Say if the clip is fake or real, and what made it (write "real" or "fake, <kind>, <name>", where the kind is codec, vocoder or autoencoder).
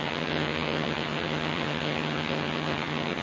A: fake, vocoder, HiFi-GAN